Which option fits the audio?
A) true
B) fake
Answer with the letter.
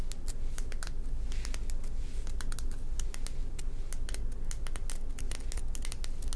A